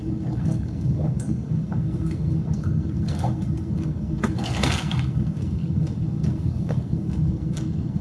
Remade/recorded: remade